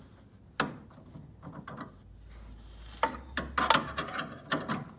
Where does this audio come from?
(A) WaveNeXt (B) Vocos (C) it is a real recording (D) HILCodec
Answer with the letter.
C